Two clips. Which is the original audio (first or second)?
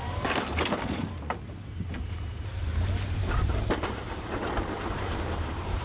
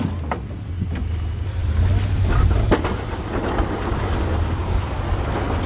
second